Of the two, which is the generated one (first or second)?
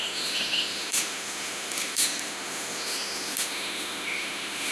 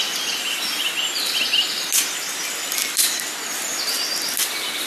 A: first